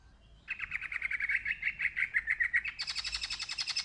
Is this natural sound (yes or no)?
yes